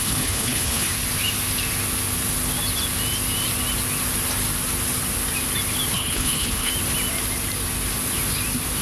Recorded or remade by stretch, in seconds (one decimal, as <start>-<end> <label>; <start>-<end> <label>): 0.0-0.9 remade; 0.9-5.9 recorded; 5.9-6.7 remade; 6.7-8.8 recorded